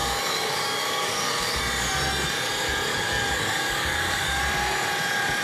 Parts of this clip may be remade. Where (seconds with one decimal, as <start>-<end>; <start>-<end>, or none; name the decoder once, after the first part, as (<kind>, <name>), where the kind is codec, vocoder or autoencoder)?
0.0-1.6 (codec, DAC); 2.9-4.4